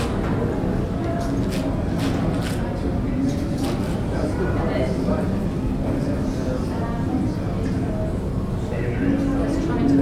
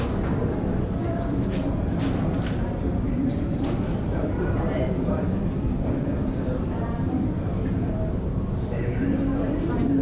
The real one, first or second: first